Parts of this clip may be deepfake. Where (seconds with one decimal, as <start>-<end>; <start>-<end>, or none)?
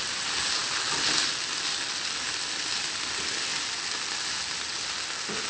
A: none